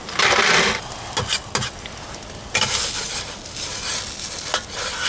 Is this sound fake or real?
real